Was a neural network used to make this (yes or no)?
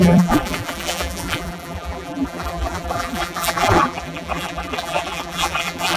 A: yes